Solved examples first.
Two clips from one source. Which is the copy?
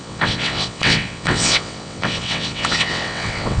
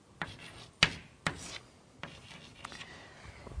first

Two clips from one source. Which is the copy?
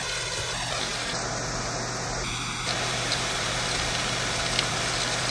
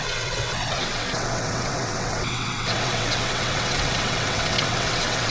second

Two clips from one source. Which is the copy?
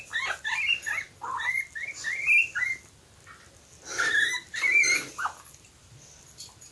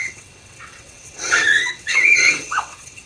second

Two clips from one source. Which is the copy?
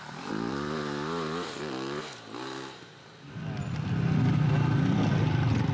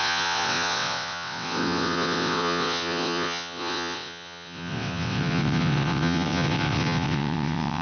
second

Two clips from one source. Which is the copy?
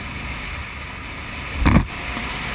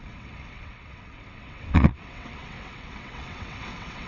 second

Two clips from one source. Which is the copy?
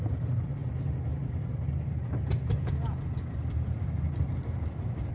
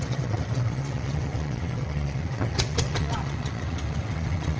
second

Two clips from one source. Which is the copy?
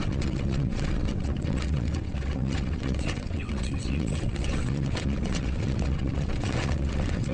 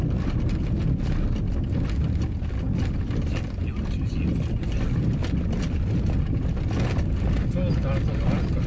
first